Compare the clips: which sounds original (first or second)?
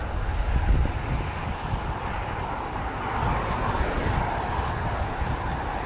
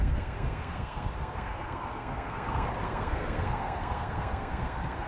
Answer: first